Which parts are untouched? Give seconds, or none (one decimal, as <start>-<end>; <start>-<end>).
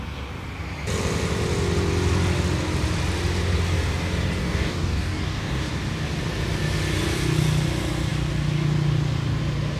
0.0-4.4; 5.7-9.8